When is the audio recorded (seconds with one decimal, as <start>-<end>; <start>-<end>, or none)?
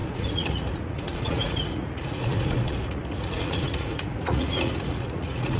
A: none